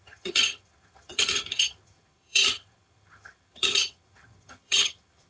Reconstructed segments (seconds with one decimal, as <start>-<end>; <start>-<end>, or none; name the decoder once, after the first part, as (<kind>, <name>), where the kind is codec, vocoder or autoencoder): 0.0-5.3 (vocoder, HiFi-GAN)